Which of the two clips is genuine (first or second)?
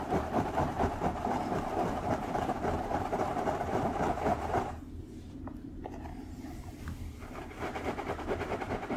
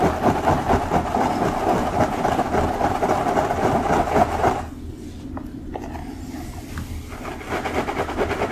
second